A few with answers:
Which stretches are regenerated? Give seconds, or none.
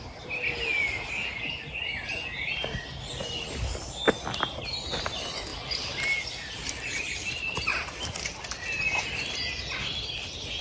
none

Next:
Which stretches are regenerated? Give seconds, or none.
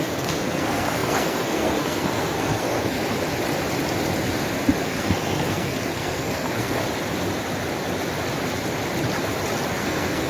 0.0-3.0 (codec, SNAC); 4.8-6.8; 9.7-10.3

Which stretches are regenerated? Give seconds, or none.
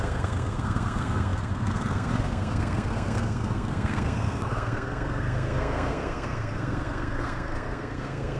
0.0-8.4 (codec, SNAC)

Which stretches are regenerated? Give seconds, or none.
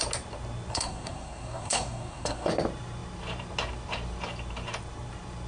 0.7-2.5 (codec, SNAC)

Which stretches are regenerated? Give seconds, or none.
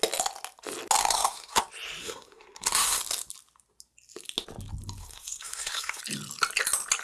1.0-1.6 (codec, SNAC); 2.0-3.0; 5.0-6.0